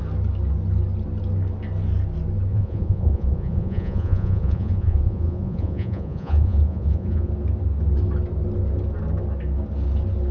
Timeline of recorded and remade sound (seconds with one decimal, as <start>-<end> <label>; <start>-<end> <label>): 0.0-2.5 recorded; 2.5-7.3 remade; 7.3-10.3 recorded

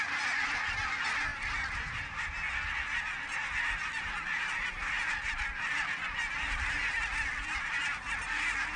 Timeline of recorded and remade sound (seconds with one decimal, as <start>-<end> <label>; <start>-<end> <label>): 0.0-8.8 recorded

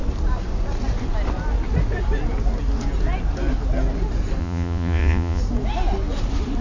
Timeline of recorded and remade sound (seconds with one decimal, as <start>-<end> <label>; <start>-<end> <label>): 0.0-4.4 recorded; 4.4-5.4 remade; 5.4-6.6 recorded

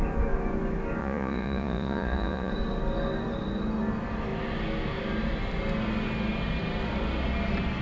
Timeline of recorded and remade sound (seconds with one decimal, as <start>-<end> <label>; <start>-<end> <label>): 0.0-1.0 recorded; 1.0-2.5 remade; 2.5-7.8 recorded